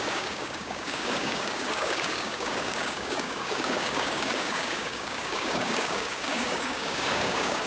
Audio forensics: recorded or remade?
remade